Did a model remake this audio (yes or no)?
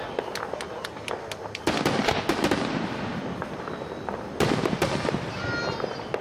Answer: no